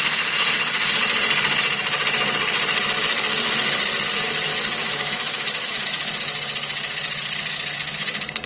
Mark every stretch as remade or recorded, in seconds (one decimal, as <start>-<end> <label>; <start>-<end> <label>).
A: 0.0-4.5 recorded; 4.5-5.8 remade; 5.8-8.5 recorded